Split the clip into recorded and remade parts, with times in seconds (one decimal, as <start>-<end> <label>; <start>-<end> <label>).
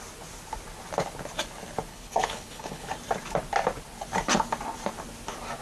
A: 0.0-1.9 recorded; 1.9-2.9 remade; 2.9-5.6 recorded